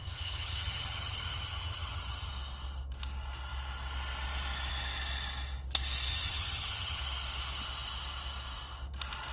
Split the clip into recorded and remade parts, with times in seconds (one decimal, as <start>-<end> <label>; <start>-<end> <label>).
0.0-2.3 remade; 2.3-6.1 recorded; 6.1-7.0 remade; 7.0-9.3 recorded